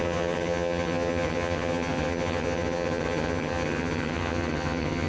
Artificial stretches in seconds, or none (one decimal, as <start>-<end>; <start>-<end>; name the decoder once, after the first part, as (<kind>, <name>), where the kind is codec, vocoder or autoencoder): 0.0-5.1 (vocoder, HiFi-GAN)

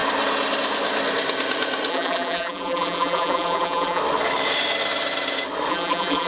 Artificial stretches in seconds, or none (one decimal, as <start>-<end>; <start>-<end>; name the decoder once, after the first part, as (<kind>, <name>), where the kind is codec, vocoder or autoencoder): 1.9-4.0 (vocoder, BigVGAN v2); 5.7-6.3

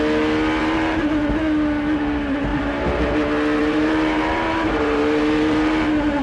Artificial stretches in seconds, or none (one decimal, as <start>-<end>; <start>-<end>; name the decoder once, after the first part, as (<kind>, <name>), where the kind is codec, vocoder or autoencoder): 0.6-1.4 (vocoder, BigVGAN v2); 2.5-3.0; 3.6-6.2